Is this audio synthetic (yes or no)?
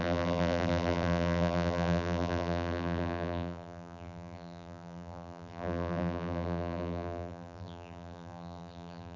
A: yes